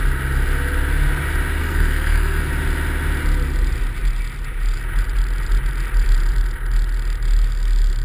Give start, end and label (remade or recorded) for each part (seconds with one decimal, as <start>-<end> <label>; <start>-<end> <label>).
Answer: 0.0-1.6 recorded; 1.6-2.5 remade; 2.5-8.0 recorded